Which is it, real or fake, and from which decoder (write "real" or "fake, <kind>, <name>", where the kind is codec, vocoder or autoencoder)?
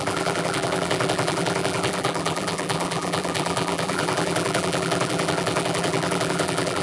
fake, vocoder, BigVGAN v2